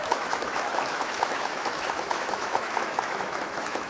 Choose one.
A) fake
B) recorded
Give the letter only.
A